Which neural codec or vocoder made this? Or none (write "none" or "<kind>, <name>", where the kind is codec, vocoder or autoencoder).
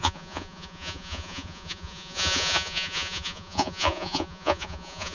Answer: vocoder, Vocos